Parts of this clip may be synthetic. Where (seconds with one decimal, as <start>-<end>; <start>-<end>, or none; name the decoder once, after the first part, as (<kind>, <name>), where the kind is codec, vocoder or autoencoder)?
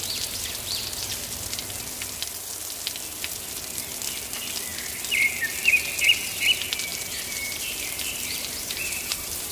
6.9-9.5 (vocoder, BigVGAN v2)